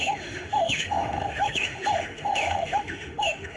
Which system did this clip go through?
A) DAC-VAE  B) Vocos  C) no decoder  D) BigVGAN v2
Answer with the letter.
A